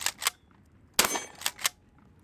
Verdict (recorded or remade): recorded